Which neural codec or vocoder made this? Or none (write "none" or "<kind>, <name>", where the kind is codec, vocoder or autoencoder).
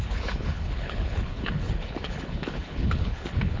codec, HILCodec